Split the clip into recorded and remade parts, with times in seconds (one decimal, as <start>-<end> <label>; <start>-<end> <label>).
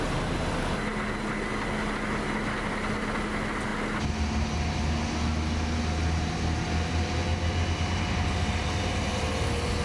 0.0-9.8 recorded